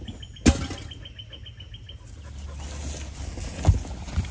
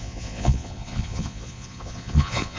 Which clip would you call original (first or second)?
first